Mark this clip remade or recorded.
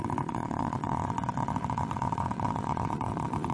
remade